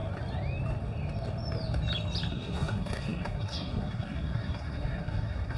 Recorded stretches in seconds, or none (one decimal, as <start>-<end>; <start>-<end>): 0.0-2.3